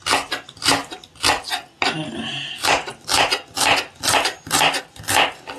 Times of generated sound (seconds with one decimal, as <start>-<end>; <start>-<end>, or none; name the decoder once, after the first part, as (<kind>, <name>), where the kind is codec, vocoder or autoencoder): none